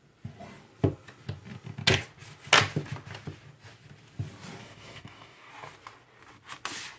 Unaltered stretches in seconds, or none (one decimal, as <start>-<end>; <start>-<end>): 0.0-4.6; 5.5-7.0